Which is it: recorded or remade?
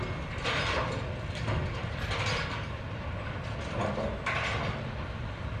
recorded